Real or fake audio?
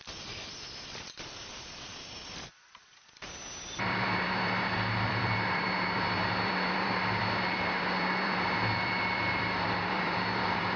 fake